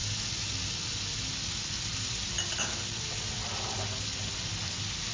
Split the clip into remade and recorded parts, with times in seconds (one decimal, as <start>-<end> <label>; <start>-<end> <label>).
0.0-5.1 recorded